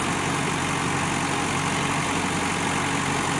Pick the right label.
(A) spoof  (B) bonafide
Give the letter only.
B